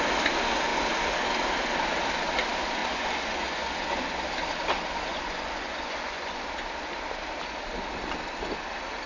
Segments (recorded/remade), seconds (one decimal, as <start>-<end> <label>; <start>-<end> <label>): 0.0-2.8 recorded; 2.8-4.3 remade; 4.3-5.1 recorded; 5.1-6.4 remade; 6.4-9.1 recorded